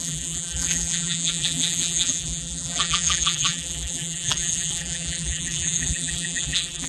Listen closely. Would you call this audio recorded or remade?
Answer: remade